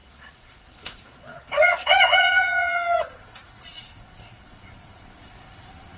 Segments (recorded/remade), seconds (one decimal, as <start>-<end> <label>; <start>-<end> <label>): 0.0-6.0 remade